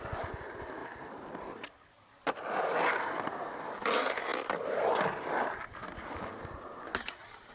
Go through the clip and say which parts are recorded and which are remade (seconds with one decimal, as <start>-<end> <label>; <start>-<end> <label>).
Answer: 0.0-0.8 recorded; 0.8-3.6 remade; 3.6-4.3 recorded; 4.3-5.6 remade; 5.6-7.5 recorded